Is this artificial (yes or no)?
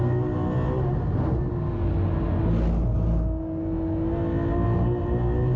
no